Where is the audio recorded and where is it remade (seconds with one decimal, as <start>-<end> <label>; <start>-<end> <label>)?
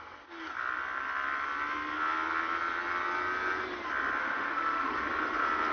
0.0-4.2 recorded; 4.2-5.0 remade; 5.0-5.7 recorded